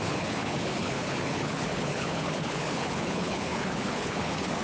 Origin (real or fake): fake